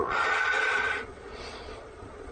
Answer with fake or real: fake